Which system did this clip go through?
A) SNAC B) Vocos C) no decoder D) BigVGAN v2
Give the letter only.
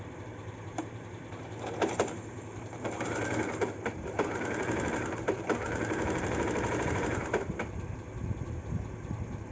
D